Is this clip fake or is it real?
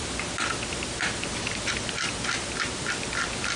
real